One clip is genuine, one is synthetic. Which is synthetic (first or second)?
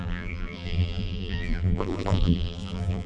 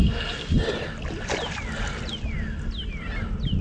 first